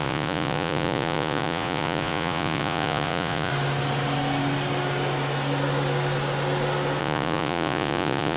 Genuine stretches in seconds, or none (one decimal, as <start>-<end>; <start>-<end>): 3.5-7.0